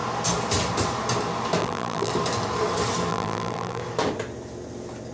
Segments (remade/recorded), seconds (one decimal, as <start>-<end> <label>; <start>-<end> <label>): 0.0-1.6 recorded; 1.6-2.1 remade; 2.1-3.1 recorded; 3.1-3.8 remade; 3.8-5.1 recorded